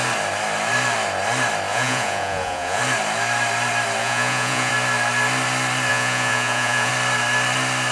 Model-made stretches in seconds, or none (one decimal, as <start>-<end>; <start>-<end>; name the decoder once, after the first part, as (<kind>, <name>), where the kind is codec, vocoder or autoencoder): 1.7-2.8 (vocoder, Vocos); 4.0-4.7; 5.9-6.9